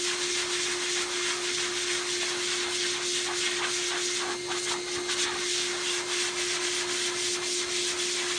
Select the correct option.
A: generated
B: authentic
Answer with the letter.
B